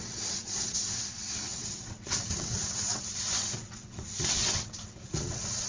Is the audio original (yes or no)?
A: no